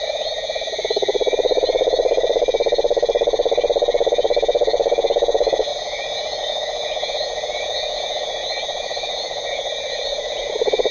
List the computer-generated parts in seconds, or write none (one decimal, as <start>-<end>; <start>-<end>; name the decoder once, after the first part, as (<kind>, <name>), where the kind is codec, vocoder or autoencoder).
0.0-1.1 (vocoder, Vocos); 4.1-10.9